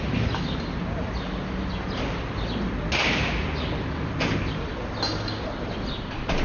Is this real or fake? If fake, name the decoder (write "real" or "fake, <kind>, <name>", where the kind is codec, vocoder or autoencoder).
real